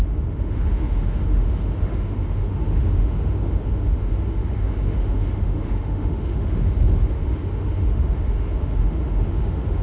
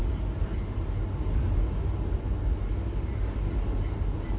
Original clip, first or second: second